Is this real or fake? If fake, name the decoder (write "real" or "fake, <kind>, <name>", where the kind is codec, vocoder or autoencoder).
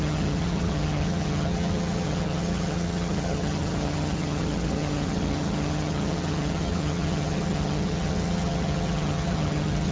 fake, vocoder, HiFi-GAN